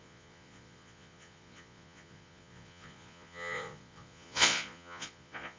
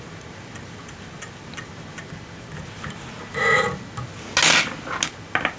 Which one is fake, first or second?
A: first